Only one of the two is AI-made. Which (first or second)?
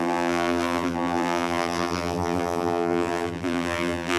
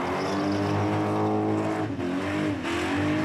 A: first